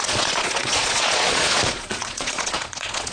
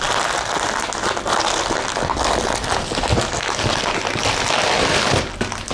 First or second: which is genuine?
second